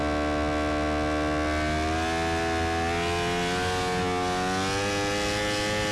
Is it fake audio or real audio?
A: real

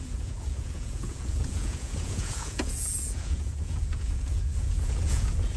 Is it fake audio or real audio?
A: fake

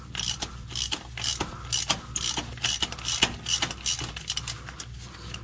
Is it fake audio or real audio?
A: real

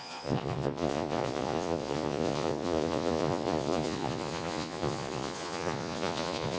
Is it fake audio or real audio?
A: fake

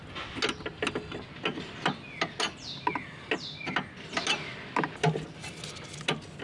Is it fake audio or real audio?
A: real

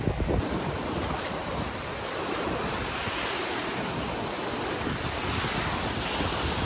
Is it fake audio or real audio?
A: real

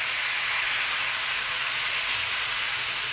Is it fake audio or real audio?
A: fake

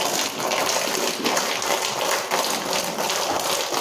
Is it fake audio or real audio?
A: real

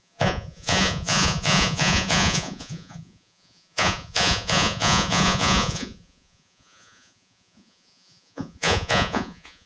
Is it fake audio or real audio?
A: fake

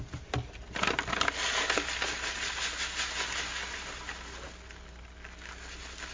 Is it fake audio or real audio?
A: real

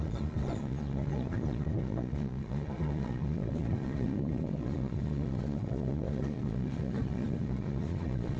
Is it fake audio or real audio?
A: fake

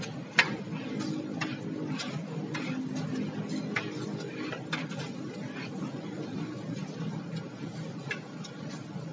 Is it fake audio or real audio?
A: real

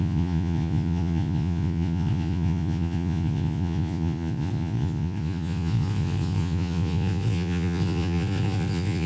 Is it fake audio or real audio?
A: fake